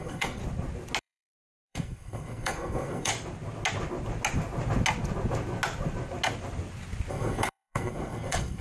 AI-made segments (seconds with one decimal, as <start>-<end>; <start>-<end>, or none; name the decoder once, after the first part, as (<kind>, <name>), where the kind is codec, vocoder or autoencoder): 0.0-0.4 (codec, SNAC); 1.0-3.1; 7.1-8.6